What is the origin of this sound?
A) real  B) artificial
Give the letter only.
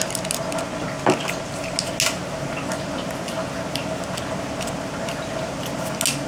A